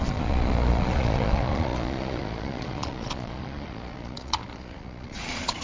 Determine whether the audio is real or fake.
fake